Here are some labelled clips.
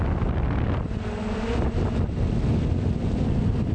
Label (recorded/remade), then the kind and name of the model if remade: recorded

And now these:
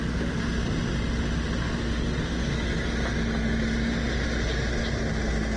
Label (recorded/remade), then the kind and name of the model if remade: recorded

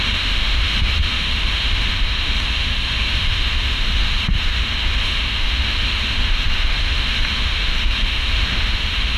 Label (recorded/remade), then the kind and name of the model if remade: remade, autoencoder, DAC-VAE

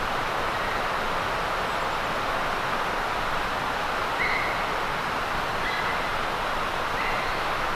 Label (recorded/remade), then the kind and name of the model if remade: recorded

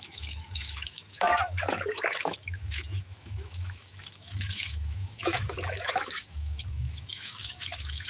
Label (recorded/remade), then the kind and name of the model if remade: remade, autoencoder, DAC-VAE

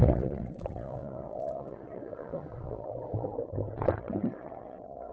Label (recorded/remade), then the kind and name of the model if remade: remade, vocoder, WaveNeXt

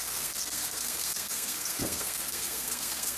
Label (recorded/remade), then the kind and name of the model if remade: remade, codec, SNAC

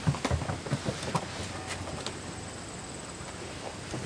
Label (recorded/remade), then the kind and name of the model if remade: recorded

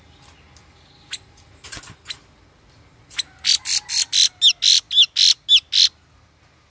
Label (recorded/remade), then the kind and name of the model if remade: recorded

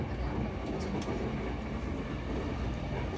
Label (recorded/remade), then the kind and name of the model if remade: recorded